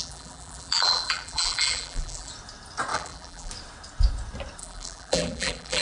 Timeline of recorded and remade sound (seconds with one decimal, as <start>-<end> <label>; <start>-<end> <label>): 0.0-2.3 remade; 2.3-2.9 recorded; 2.9-3.5 remade; 3.5-4.6 recorded; 4.6-5.8 remade